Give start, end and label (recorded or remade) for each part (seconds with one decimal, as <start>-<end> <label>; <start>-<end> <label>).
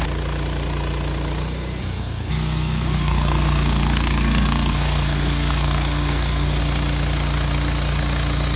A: 0.0-1.8 recorded; 1.8-6.6 remade; 6.6-8.6 recorded